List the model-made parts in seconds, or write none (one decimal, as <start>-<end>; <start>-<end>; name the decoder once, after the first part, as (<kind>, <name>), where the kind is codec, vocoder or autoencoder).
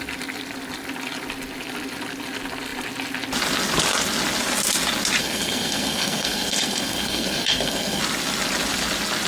5.2-8.0 (codec, SNAC)